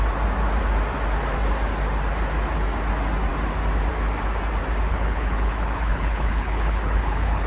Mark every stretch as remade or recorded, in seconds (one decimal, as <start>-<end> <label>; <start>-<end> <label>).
0.0-4.9 recorded; 4.9-7.5 remade